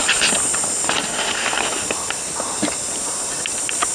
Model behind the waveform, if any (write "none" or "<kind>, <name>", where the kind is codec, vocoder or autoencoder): none